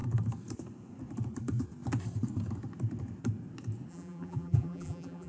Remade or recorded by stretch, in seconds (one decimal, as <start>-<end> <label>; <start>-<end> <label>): 0.0-3.9 recorded; 3.9-5.3 remade